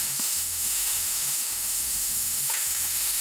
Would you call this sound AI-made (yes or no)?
yes